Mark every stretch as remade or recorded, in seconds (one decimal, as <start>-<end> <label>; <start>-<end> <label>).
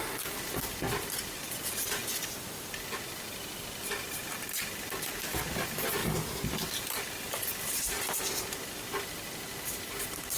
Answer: 0.0-10.4 recorded